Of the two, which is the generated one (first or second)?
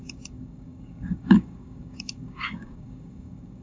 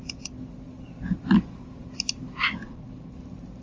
first